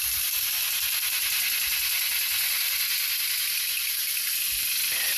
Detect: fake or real real